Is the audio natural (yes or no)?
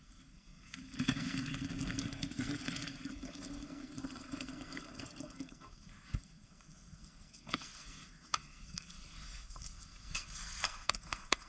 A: no